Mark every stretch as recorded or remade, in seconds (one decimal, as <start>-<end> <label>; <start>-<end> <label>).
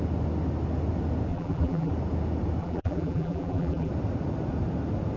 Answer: 0.0-1.3 recorded; 1.3-1.9 remade; 1.9-2.6 recorded; 2.6-3.9 remade; 3.9-5.2 recorded